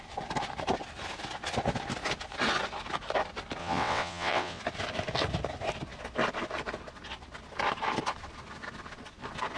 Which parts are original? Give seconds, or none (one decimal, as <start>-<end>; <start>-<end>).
0.0-3.6; 4.6-9.6